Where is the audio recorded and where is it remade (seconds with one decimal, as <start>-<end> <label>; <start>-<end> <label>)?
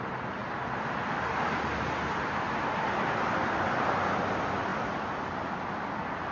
0.0-6.3 recorded